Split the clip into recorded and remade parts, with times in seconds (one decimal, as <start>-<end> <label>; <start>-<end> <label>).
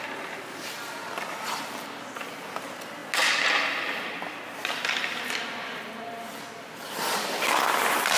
0.0-8.2 recorded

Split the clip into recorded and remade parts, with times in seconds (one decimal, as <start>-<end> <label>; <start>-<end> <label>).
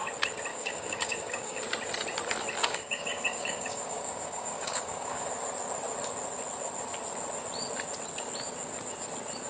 0.0-0.5 recorded; 0.5-1.6 remade; 1.6-2.6 recorded; 2.6-5.3 remade; 5.3-9.5 recorded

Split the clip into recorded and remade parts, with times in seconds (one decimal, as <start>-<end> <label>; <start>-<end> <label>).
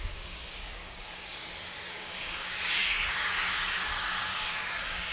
0.0-1.4 remade; 1.4-1.9 recorded; 1.9-5.1 remade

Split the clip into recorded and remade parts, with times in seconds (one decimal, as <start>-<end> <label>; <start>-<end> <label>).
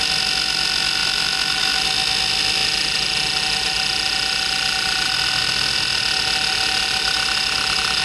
0.0-8.0 recorded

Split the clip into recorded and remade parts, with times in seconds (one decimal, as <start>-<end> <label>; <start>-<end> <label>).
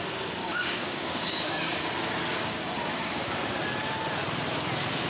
0.0-0.4 recorded; 0.4-1.9 remade; 1.9-2.3 recorded; 2.3-3.4 remade; 3.4-5.1 recorded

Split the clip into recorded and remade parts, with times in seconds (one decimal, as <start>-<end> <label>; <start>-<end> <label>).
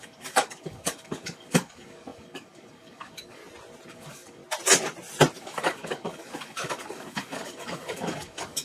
0.0-3.4 remade; 3.4-3.9 recorded; 3.9-4.4 remade; 4.4-5.4 recorded; 5.4-8.6 remade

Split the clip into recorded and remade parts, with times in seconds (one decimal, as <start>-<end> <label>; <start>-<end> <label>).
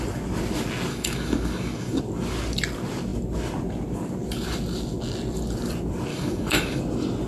0.0-0.9 recorded; 0.9-2.0 remade; 2.0-6.1 recorded; 6.1-6.8 remade; 6.8-7.3 recorded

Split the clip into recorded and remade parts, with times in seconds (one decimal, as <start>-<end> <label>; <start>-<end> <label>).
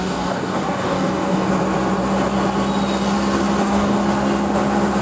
0.0-1.5 remade; 1.5-3.6 recorded; 3.6-4.0 remade; 4.0-5.0 recorded